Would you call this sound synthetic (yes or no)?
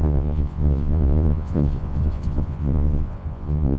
yes